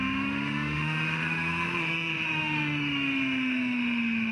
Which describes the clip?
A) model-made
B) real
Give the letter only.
A